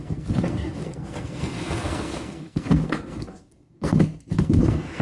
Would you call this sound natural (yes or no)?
no